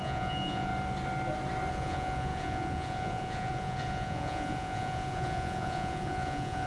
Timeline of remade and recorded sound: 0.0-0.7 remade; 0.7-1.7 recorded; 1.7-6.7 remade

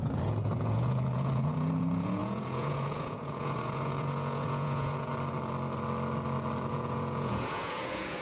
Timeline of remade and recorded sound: 0.0-5.1 remade; 5.1-6.7 recorded; 6.7-8.2 remade

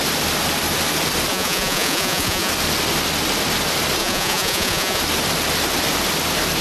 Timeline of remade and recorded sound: 0.0-1.3 recorded; 1.3-2.5 remade; 2.5-4.0 recorded; 4.0-5.0 remade; 5.0-6.6 recorded

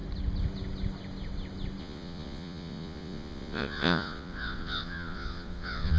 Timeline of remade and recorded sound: 0.0-1.8 recorded; 1.8-6.0 remade

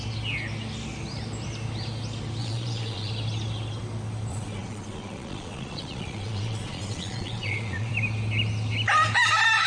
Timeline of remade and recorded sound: 0.0-2.4 recorded; 2.4-3.1 remade; 3.1-4.3 recorded; 4.3-7.9 remade; 7.9-9.7 recorded

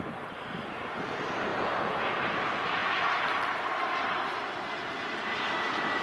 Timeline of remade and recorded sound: 0.0-1.5 recorded; 1.5-2.1 remade; 2.1-6.0 recorded

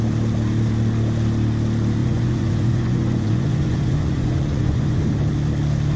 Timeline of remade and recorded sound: 0.0-2.0 recorded; 2.0-5.0 remade; 5.0-6.0 recorded